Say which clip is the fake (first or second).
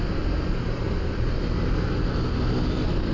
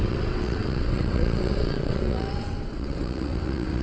second